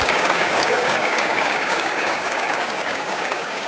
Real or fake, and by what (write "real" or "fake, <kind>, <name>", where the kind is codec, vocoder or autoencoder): fake, codec, DAC